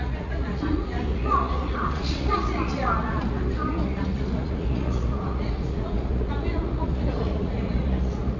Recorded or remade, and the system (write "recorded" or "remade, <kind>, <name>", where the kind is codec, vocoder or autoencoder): remade, vocoder, Vocos